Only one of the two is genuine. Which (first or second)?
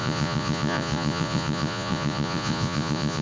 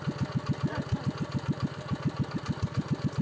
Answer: second